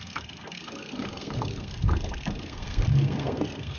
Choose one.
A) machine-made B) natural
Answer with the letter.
A